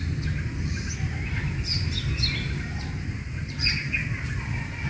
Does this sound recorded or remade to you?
recorded